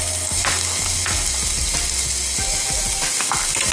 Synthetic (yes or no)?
no